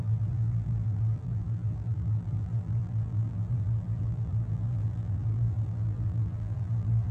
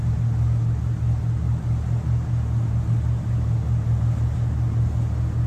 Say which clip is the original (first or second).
second